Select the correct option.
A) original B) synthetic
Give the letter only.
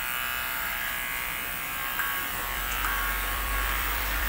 B